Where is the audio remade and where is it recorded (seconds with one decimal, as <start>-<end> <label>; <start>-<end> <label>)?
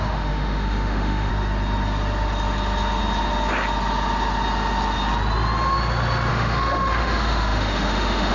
0.0-1.3 remade; 1.3-6.3 recorded; 6.3-8.3 remade